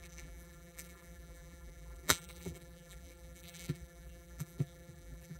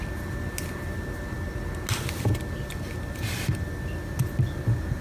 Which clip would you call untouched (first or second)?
second